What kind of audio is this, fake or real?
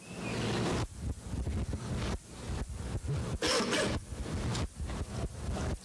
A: real